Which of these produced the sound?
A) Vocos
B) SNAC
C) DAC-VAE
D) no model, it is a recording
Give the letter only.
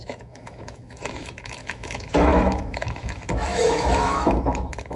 C